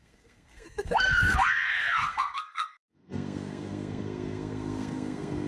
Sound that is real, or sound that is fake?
fake